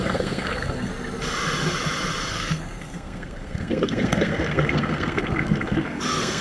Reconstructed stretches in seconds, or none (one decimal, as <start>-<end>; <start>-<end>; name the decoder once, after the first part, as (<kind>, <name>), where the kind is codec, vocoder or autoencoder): 0.0-0.9 (codec, SNAC); 2.3-6.4